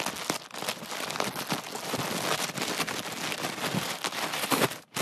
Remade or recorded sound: recorded